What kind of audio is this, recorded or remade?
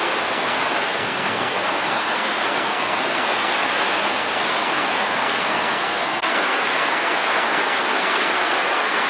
remade